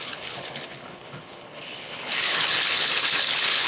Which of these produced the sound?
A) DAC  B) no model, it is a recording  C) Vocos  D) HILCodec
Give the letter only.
D